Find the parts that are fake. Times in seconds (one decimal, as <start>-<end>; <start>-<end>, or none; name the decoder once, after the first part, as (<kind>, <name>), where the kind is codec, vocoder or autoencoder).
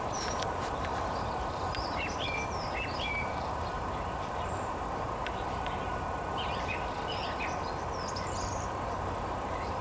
0.0-7.2 (vocoder, BigVGAN v2); 8.1-9.8